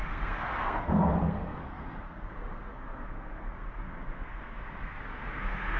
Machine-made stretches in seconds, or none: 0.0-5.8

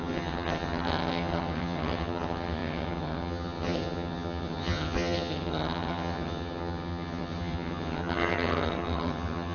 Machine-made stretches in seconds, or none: 0.0-9.5

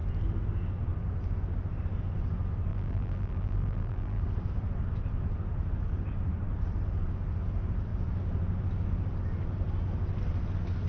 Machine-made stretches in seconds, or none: 2.7-4.2